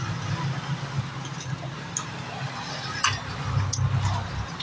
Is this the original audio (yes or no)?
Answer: yes